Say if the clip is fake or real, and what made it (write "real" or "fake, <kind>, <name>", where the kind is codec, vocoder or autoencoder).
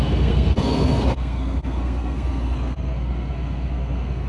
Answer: fake, codec, SNAC